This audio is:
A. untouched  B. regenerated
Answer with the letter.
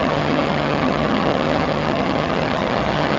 B